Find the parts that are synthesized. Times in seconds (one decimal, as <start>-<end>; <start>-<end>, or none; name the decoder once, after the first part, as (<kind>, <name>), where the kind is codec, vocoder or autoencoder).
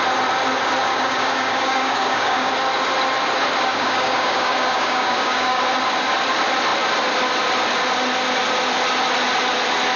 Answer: 0.9-2.5 (codec, DAC); 3.7-5.6